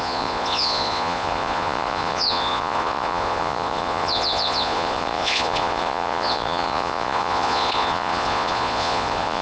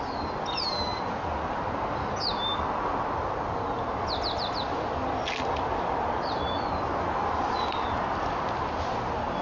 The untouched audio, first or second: second